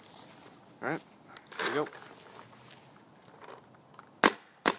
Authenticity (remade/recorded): recorded